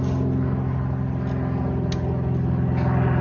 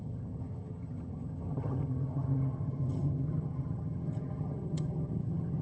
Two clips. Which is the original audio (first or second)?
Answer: first